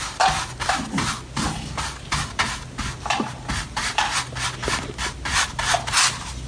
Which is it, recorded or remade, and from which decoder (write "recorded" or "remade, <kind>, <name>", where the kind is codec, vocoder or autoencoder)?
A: recorded